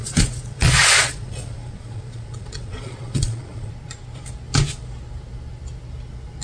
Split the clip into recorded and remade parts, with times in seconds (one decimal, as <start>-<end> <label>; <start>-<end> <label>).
0.0-3.7 remade; 3.7-6.4 recorded